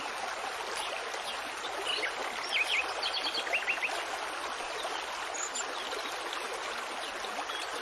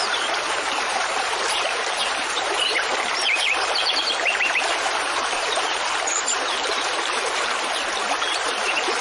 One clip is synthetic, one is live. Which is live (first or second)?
first